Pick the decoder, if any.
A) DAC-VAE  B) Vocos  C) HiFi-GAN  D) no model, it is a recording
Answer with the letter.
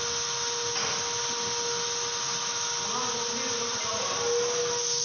D